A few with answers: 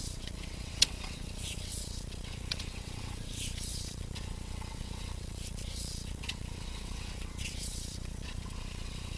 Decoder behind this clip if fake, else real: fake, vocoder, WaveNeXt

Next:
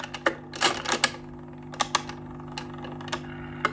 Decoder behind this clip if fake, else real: real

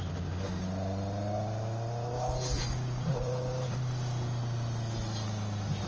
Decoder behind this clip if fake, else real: real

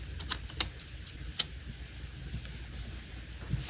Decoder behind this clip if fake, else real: real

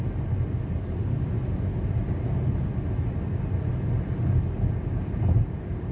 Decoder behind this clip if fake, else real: real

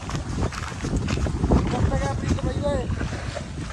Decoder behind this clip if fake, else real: real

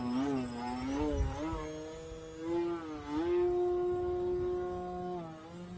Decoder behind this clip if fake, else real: real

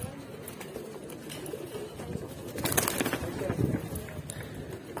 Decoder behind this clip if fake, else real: real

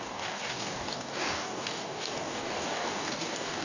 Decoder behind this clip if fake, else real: fake, codec, DAC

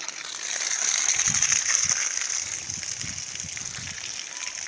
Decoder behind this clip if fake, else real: real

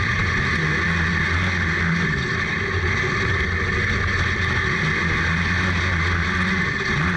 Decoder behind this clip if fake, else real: real